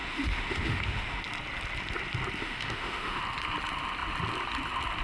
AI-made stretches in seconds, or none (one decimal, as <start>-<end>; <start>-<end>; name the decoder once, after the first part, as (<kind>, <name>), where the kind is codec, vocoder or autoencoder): 0.0-1.2 (autoencoder, DAC-VAE); 2.4-3.2